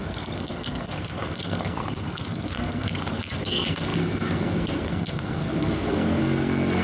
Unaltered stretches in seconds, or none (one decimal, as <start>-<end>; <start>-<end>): none